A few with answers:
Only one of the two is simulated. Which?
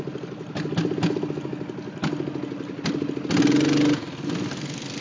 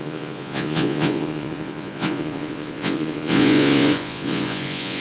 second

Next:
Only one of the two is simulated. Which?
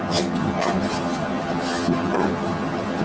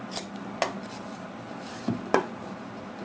first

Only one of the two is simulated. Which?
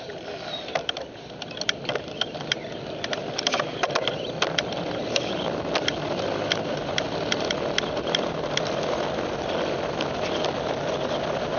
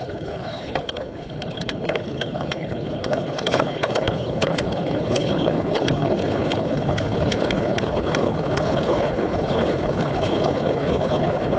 second